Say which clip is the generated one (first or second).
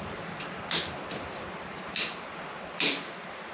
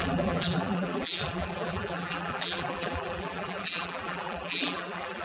second